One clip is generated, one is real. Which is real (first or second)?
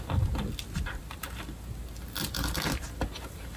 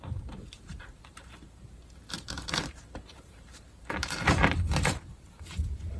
first